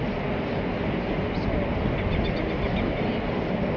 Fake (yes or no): no